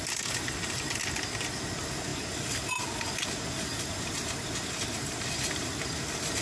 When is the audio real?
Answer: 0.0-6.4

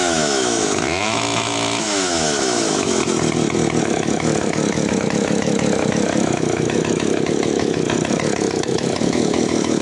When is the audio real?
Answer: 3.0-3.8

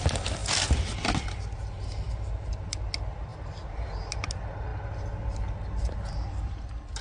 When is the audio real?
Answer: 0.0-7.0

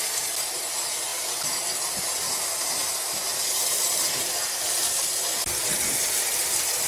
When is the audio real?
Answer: 0.0-6.9

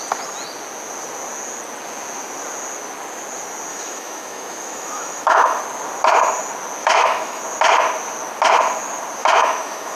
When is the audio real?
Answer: 0.0-3.7; 5.6-6.8; 7.4-9.2

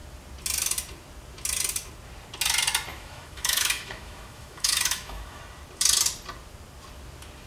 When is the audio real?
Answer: 0.0-2.9; 5.4-7.5

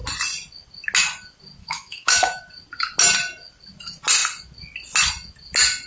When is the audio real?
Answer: 0.0-1.6; 2.4-5.9

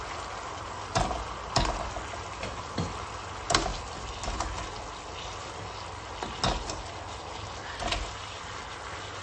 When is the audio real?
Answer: 0.0-9.2